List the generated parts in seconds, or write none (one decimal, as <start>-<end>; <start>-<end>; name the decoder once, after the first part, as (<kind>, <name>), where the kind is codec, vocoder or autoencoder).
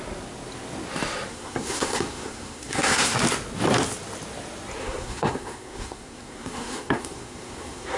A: 1.3-3.2 (codec, SNAC); 4.8-8.0